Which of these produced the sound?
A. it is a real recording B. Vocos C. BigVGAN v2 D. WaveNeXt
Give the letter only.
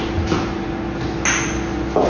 A